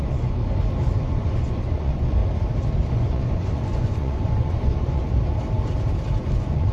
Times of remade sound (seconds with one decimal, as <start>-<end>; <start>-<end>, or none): 0.0-0.4; 1.0-2.2; 2.9-5.0; 6.2-6.7